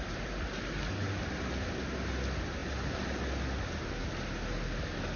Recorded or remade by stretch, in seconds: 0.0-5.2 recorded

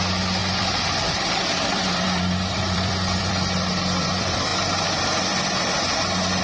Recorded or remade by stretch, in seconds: 0.0-4.5 remade; 4.5-6.4 recorded

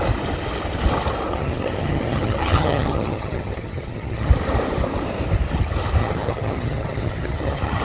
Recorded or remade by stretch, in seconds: 0.0-1.3 recorded; 1.3-4.3 remade; 4.3-6.0 recorded; 6.0-7.8 remade

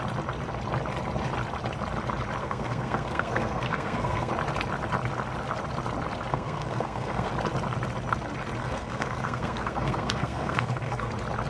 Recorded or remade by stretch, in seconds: 0.0-2.4 recorded; 2.4-4.3 remade; 4.3-6.3 recorded; 6.3-7.3 remade; 7.3-8.6 recorded; 8.6-11.1 remade; 11.1-11.5 recorded